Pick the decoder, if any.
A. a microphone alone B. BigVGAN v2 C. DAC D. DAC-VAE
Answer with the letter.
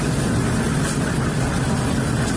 A